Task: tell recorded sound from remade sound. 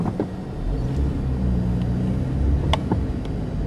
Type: recorded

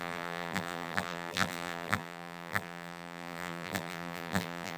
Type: remade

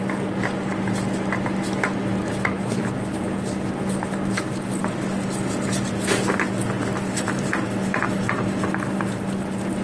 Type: recorded